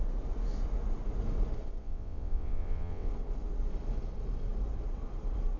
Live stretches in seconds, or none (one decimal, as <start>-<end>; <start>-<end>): 0.0-1.8; 3.1-5.6